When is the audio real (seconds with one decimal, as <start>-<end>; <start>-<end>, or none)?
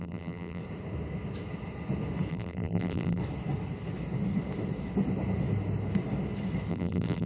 0.6-2.3; 3.2-6.7